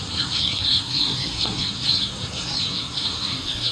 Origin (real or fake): fake